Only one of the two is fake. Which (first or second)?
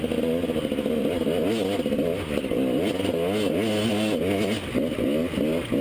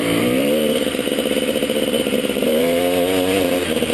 second